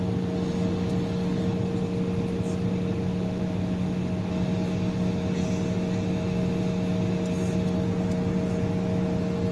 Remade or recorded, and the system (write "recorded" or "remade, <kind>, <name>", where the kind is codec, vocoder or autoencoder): recorded